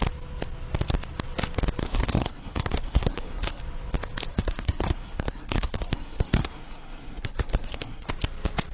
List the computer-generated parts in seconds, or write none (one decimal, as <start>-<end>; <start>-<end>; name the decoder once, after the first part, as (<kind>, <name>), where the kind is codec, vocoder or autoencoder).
1.8-3.6 (codec, SNAC); 4.3-8.1